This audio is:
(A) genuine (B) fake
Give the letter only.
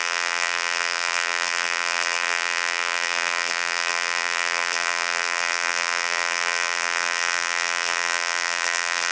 B